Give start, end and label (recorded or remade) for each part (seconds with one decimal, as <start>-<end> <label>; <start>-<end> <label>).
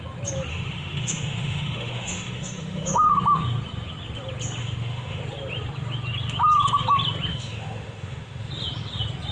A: 0.0-0.5 recorded; 0.5-3.1 remade; 3.1-4.6 recorded; 4.6-5.2 remade; 5.2-7.3 recorded; 7.3-8.5 remade; 8.5-9.3 recorded